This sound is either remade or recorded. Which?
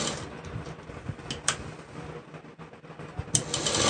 recorded